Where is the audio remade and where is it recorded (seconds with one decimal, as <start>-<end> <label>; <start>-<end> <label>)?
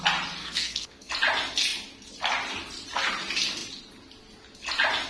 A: 0.0-0.4 recorded; 0.4-1.1 remade; 1.1-5.1 recorded